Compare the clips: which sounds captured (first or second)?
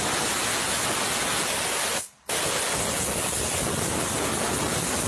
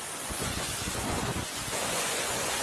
first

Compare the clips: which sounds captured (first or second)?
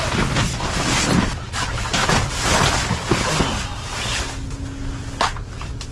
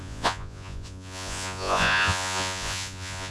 first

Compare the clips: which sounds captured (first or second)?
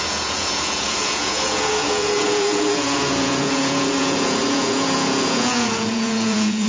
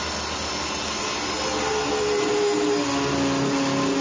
second